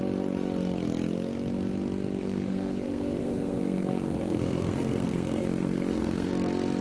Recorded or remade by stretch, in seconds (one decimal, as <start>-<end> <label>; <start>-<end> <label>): 0.0-2.2 recorded; 2.2-6.3 remade; 6.3-6.8 recorded